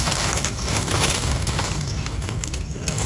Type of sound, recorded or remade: remade